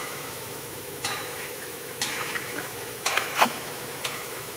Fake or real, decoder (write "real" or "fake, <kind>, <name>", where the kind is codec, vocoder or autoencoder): fake, autoencoder, DAC-VAE